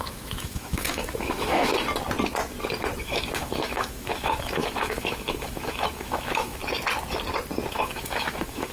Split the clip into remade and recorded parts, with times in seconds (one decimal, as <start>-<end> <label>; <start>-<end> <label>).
0.0-1.7 remade; 1.7-3.0 recorded; 3.0-6.6 remade; 6.6-7.7 recorded; 7.7-8.7 remade